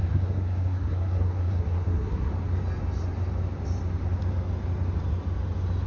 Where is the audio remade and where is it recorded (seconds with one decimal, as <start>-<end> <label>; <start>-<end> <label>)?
0.0-2.3 remade; 2.3-5.9 recorded